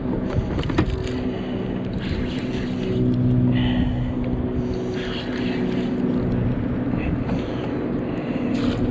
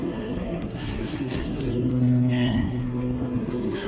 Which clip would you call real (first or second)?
first